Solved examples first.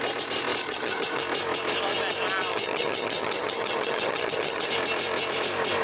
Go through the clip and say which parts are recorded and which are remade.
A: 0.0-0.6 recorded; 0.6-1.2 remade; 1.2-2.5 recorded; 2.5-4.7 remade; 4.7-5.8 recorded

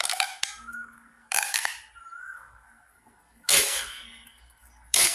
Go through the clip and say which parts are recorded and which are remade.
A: 0.0-1.7 remade; 1.7-2.2 recorded; 2.2-5.1 remade

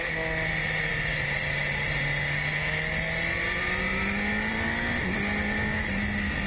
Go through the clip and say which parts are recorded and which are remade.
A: 0.0-6.5 recorded

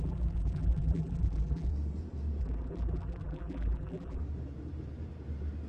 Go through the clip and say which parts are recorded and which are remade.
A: 0.0-1.7 remade; 1.7-2.4 recorded; 2.4-4.2 remade; 4.2-5.7 recorded

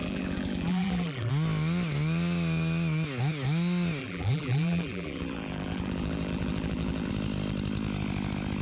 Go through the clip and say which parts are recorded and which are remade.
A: 0.0-1.3 remade; 1.3-4.0 recorded; 4.0-7.1 remade; 7.1-8.6 recorded

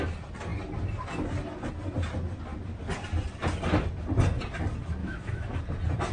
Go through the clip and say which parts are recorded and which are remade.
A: 0.0-5.0 recorded; 5.0-5.6 remade; 5.6-6.1 recorded

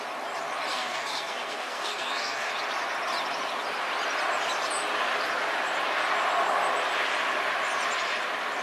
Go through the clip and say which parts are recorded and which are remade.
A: 0.0-0.7 recorded; 0.7-2.5 remade; 2.5-8.6 recorded